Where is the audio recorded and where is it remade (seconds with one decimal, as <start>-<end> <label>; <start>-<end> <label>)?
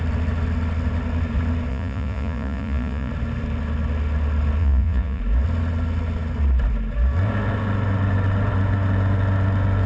0.0-1.7 recorded; 1.7-3.1 remade; 3.1-4.6 recorded; 4.6-5.2 remade; 5.2-9.9 recorded